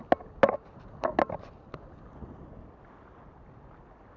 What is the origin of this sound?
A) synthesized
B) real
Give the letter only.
B